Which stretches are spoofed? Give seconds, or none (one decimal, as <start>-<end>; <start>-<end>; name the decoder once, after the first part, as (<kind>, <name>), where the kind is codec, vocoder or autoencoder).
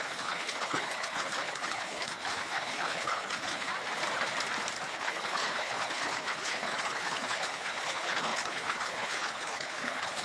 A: 0.0-3.7 (codec, HILCodec); 4.9-10.2